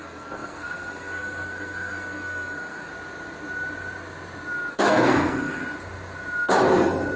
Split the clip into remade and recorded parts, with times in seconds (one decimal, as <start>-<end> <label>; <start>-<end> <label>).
0.0-2.9 remade; 2.9-4.7 recorded; 4.7-5.6 remade; 5.6-7.2 recorded